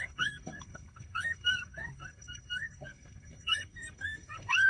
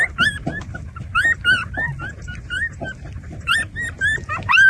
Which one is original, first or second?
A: second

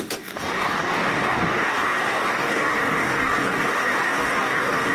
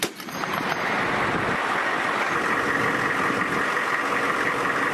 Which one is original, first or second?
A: second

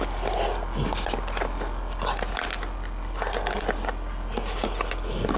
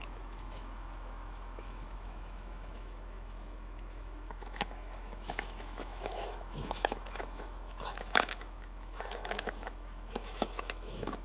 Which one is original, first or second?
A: first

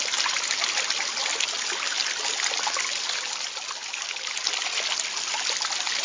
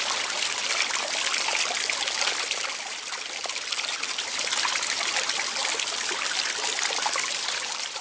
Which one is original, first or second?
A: first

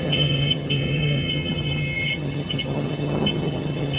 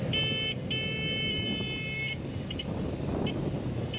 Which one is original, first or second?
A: second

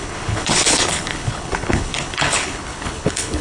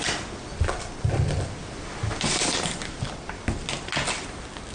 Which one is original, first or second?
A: second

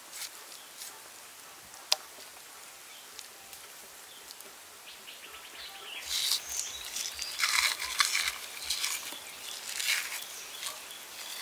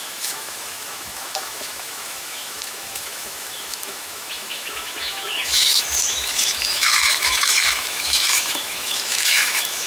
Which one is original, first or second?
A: first